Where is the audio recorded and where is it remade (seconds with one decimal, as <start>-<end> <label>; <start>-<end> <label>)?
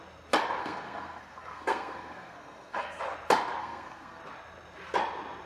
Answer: 0.0-0.6 recorded; 0.6-3.0 remade; 3.0-3.6 recorded; 3.6-4.2 remade; 4.2-5.5 recorded